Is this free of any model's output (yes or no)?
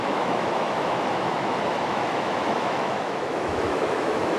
no